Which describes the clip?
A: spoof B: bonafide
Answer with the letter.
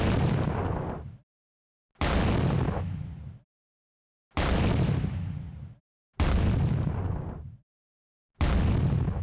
B